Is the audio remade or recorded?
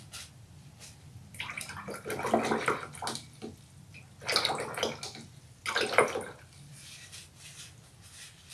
recorded